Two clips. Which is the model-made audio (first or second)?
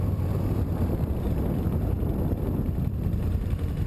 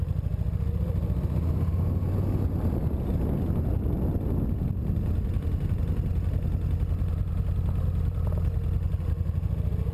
first